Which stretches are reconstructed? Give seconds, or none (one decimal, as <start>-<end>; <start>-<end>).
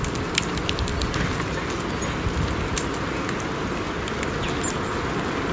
none